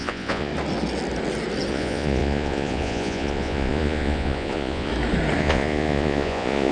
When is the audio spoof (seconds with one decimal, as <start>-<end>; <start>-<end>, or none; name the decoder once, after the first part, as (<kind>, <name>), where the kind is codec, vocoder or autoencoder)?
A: 0.0-0.5 (vocoder, Vocos); 1.7-4.9; 5.4-6.7